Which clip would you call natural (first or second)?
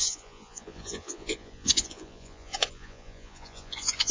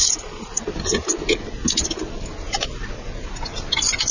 second